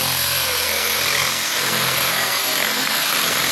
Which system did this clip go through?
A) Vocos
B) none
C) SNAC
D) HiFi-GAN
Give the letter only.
C